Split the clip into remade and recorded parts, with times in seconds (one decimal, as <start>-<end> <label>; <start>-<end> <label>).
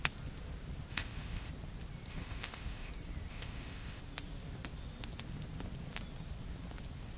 0.0-0.9 recorded; 0.9-1.5 remade; 1.5-2.1 recorded; 2.1-2.9 remade; 2.9-3.3 recorded; 3.3-4.0 remade; 4.0-7.2 recorded